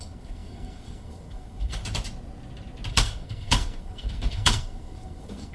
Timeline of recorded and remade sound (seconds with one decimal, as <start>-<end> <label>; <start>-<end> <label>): 0.0-1.8 remade; 1.8-2.9 recorded; 2.9-5.5 remade

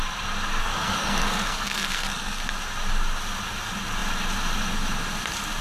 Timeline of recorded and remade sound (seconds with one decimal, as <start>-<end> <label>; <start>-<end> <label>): 0.0-0.6 recorded; 0.6-2.4 remade; 2.4-5.6 recorded

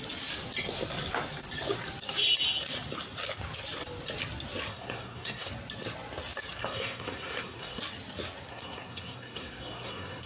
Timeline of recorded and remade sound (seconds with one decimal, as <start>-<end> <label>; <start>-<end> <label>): 0.0-4.7 recorded; 4.7-5.5 remade; 5.5-6.6 recorded; 6.6-7.8 remade; 7.8-8.5 recorded; 8.5-10.3 remade

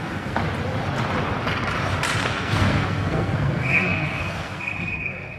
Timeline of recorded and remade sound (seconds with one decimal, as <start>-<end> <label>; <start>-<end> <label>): 0.0-0.4 remade; 0.4-2.2 recorded; 2.2-5.4 remade

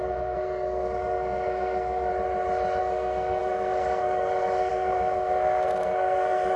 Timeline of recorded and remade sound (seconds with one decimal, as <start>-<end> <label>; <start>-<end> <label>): 0.0-2.1 remade; 2.1-2.8 recorded; 2.8-6.6 remade